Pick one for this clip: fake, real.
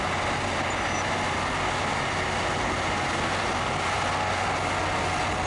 real